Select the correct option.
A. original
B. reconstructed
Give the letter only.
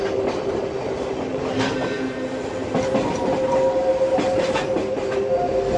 A